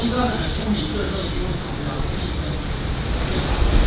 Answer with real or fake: real